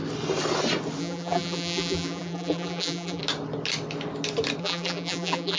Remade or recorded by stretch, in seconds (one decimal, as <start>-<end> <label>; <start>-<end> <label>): 0.0-1.0 recorded; 1.0-3.2 remade; 3.2-4.6 recorded; 4.6-5.6 remade